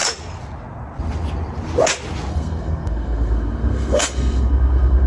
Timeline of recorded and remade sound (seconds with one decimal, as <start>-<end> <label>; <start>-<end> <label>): 0.0-2.3 recorded; 2.3-5.1 remade